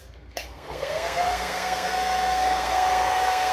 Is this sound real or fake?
fake